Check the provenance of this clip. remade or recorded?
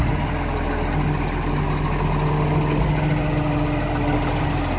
recorded